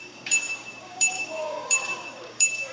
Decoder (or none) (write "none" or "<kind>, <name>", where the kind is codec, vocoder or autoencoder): codec, DAC